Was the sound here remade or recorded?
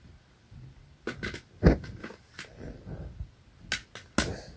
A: recorded